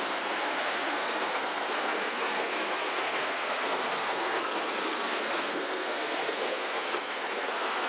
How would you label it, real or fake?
fake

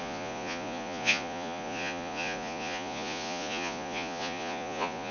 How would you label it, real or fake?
fake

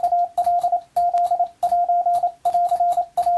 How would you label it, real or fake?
real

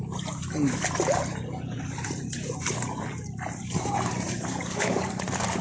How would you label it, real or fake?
fake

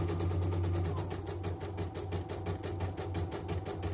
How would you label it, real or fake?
real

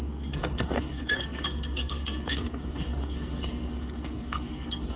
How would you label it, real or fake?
fake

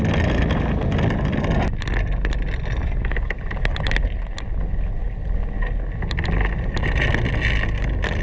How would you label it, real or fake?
real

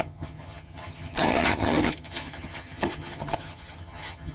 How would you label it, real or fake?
fake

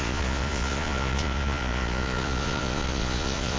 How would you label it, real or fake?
fake